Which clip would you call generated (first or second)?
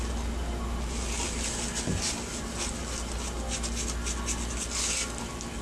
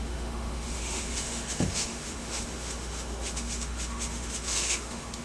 second